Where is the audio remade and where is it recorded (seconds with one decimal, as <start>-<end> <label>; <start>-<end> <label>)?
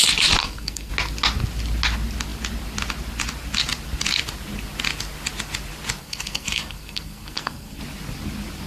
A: 0.0-0.4 recorded; 0.4-0.9 remade; 0.9-6.0 recorded; 6.0-7.8 remade; 7.8-8.7 recorded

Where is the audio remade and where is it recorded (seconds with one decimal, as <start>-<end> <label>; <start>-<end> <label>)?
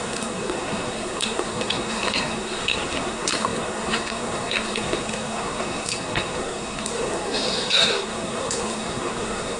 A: 0.0-9.6 remade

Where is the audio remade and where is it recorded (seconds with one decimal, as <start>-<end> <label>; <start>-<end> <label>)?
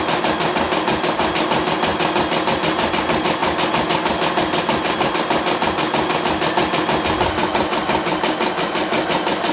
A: 0.0-9.5 recorded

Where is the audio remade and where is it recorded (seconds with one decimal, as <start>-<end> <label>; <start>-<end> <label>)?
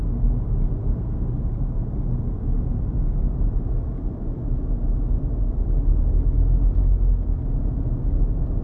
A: 0.0-0.8 recorded; 0.8-1.5 remade; 1.5-8.6 recorded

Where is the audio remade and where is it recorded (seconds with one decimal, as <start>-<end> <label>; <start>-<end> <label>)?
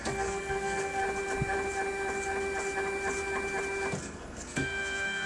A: 0.0-1.0 remade; 1.0-4.0 recorded; 4.0-5.3 remade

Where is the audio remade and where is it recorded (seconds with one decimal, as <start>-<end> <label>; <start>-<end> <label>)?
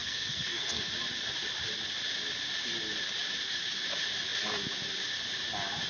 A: 0.0-0.9 remade; 0.9-5.9 recorded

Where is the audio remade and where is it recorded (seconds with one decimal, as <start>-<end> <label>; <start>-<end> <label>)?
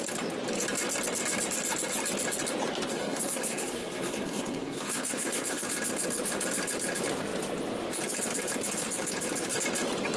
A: 0.0-2.9 recorded; 2.9-5.6 remade; 5.6-10.2 recorded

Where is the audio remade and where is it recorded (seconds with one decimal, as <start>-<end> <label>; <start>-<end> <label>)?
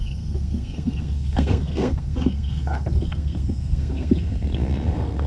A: 0.0-5.3 remade